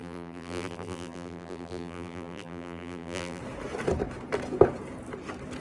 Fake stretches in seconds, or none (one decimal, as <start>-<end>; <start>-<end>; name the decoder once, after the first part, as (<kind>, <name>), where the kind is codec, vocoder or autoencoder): 0.0-3.4 (vocoder, BigVGAN v2)